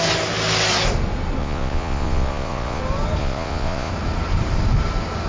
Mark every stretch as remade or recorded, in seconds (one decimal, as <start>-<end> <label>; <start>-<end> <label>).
0.0-1.4 recorded; 1.4-2.8 remade; 2.8-3.2 recorded; 3.2-3.9 remade; 3.9-5.3 recorded